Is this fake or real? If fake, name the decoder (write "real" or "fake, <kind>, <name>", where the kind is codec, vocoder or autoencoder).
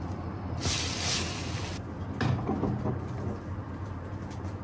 real